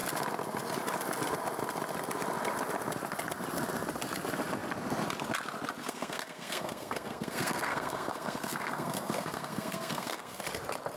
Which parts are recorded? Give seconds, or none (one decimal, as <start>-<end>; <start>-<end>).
0.0-5.8; 10.4-11.0